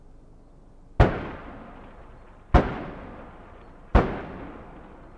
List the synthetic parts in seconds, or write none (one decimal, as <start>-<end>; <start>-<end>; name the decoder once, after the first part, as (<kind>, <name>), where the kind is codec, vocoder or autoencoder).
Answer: none